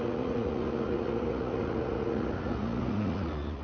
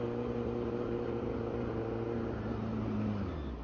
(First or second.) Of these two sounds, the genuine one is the second